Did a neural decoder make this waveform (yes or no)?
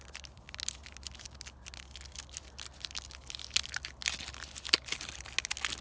no